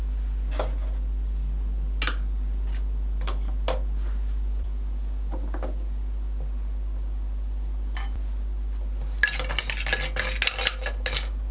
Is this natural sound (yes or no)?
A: yes